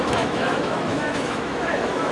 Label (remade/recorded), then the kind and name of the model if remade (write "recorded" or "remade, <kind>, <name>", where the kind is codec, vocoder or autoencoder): remade, autoencoder, DAC-VAE